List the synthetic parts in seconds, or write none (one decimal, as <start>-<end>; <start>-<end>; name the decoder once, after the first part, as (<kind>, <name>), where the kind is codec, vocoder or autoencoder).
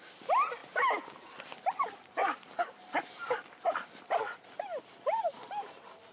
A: 0.0-0.6 (vocoder, BigVGAN v2); 1.4-6.1